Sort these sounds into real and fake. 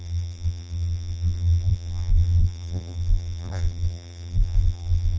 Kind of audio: fake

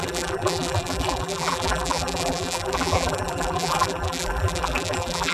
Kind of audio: fake